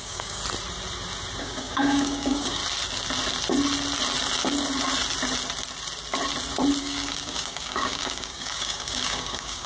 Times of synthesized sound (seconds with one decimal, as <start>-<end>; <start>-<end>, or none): 0.0-0.4; 1.4-2.6; 6.8-9.7